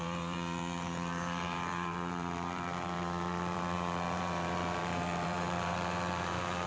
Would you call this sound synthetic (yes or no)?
yes